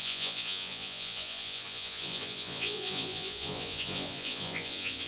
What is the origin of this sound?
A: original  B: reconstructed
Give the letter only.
B